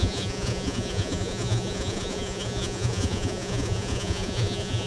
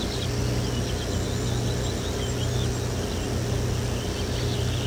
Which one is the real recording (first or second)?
second